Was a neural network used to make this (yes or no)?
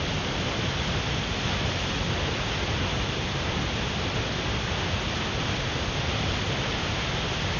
no